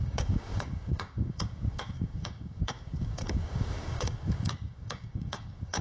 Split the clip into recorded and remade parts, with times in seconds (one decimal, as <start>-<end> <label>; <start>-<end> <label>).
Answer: 0.0-5.8 remade